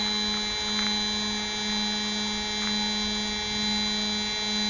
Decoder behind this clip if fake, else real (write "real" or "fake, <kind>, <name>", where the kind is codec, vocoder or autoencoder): real